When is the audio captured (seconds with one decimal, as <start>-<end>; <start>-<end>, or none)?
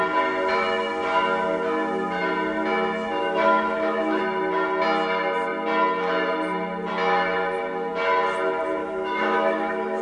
0.0-3.2; 4.2-8.8